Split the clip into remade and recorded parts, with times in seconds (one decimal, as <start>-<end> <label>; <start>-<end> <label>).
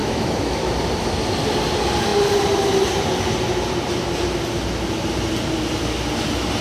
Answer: 0.0-0.7 remade; 0.7-6.6 recorded